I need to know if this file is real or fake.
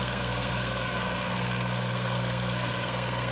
fake